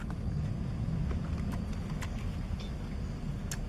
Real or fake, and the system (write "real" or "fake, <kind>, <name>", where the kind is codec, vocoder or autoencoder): real